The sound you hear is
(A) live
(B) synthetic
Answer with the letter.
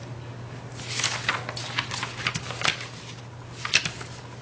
A